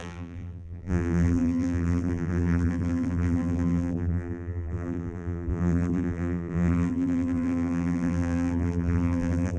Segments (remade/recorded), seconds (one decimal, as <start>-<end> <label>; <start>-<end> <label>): 0.0-9.6 remade